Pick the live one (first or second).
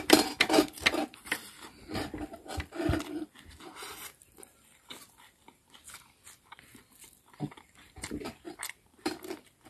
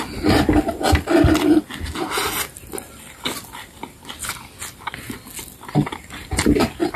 second